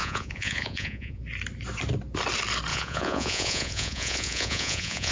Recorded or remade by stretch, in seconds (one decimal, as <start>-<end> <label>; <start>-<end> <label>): 0.0-1.2 remade; 1.2-2.7 recorded; 2.7-5.1 remade